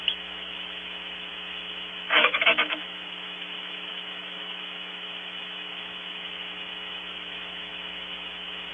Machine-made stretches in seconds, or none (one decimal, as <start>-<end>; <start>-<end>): 0.0-8.7